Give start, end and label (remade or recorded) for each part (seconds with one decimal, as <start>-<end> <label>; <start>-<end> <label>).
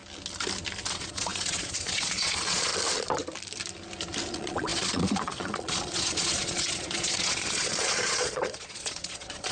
0.0-0.9 recorded; 0.9-2.7 remade; 2.7-4.3 recorded; 4.3-9.5 remade